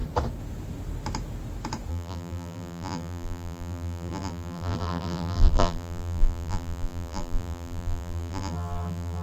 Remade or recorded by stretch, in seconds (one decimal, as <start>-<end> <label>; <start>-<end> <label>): 0.0-1.9 recorded; 1.9-9.2 remade